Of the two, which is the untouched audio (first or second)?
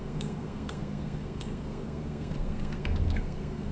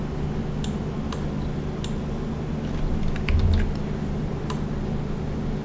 second